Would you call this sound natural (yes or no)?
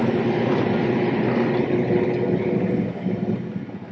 yes